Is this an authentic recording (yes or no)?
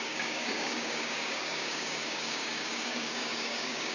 no